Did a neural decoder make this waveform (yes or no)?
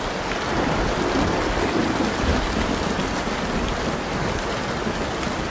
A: no